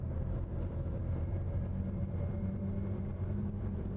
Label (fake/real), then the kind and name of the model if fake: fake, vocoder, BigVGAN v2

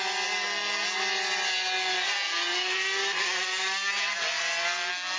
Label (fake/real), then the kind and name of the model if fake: real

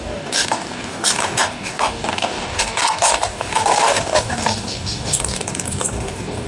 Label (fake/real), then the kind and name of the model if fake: fake, codec, DAC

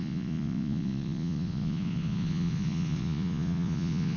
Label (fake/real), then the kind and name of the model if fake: fake, vocoder, Vocos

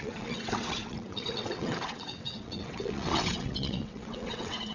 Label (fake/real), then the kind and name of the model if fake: fake, vocoder, WaveNeXt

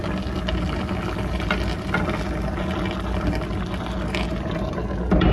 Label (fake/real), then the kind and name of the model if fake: real